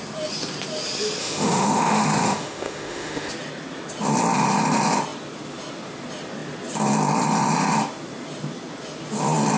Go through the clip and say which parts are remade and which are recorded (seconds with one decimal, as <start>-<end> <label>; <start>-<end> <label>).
0.0-1.2 recorded; 1.2-3.3 remade; 3.3-9.6 recorded